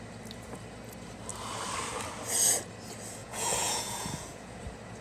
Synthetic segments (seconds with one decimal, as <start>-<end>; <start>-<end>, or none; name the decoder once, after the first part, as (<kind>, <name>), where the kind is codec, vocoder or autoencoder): 3.2-4.6 (vocoder, Vocos)